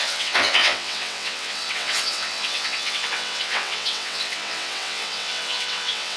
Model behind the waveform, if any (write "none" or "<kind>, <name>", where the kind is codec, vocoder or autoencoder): vocoder, WaveNeXt